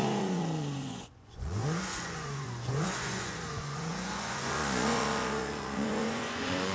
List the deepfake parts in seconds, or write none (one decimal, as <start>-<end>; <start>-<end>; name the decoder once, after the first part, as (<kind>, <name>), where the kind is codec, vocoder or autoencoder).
0.0-6.7 (vocoder, Vocos)